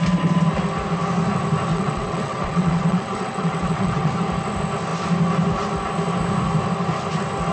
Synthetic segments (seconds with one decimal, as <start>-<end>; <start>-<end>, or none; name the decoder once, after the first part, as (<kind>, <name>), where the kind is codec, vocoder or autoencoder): 1.7-4.1 (vocoder, WaveNeXt)